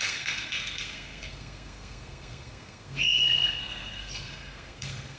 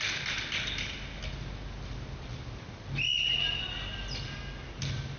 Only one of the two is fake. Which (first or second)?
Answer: first